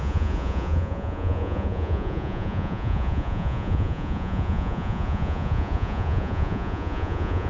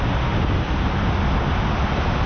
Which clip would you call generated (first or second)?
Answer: first